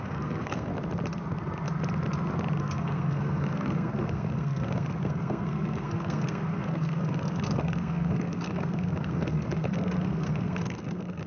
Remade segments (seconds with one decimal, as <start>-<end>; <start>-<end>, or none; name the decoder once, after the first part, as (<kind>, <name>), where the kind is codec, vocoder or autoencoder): 0.0-0.7 (codec, SNAC); 2.6-11.3

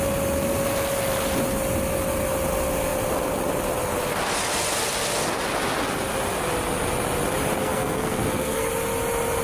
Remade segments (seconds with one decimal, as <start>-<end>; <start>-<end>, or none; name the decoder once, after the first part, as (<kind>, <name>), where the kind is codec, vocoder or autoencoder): 7.6-8.7 (codec, SNAC)